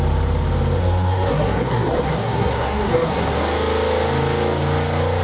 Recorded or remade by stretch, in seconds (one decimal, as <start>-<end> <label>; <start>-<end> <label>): 0.0-0.8 recorded; 0.8-3.4 remade; 3.4-5.2 recorded